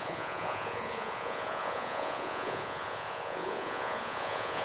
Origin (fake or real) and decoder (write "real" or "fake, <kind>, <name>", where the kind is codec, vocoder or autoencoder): fake, vocoder, Vocos